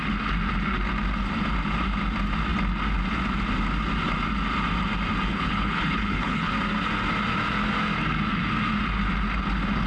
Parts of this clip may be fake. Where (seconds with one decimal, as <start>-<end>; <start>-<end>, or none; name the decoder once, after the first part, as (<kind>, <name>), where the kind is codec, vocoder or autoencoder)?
5.3-6.5 (codec, HILCodec)